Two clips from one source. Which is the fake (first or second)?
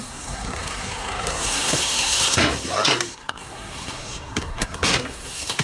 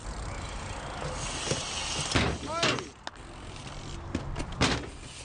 first